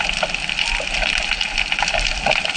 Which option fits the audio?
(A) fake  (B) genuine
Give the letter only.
B